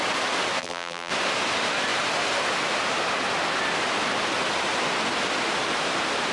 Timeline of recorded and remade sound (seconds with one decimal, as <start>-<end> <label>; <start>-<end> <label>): 0.0-0.6 recorded; 0.6-1.1 remade; 1.1-6.3 recorded